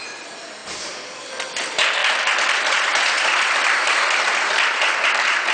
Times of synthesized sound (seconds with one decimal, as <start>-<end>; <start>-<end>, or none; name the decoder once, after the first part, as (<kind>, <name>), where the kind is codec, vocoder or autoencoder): 0.6-1.3 (vocoder, BigVGAN v2); 2.0-5.5